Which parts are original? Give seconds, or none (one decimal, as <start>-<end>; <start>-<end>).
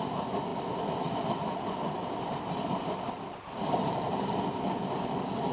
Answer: 0.0-5.5